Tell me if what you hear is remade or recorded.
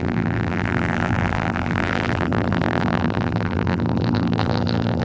remade